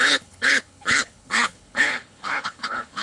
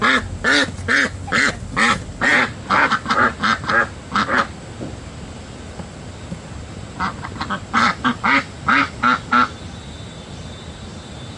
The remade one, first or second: first